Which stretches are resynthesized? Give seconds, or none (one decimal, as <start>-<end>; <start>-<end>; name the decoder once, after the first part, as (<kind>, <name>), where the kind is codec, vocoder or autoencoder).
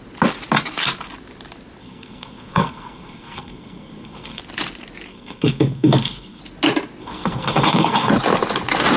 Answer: 1.8-4.4 (codec, SNAC); 5.1-6.4; 7.0-8.1